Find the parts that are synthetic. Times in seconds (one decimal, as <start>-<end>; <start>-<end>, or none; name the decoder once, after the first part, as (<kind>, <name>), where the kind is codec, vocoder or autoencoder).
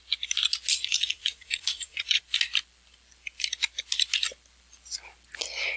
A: 0.7-2.2 (vocoder, Vocos)